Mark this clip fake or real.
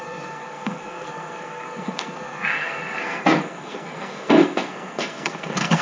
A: fake